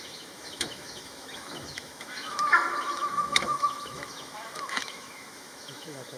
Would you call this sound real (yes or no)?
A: no